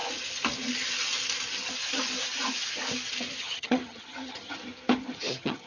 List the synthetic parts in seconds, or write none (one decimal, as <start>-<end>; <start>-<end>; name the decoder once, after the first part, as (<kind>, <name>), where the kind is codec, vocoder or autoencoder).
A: 3.4-4.6 (vocoder, HiFi-GAN); 5.1-5.7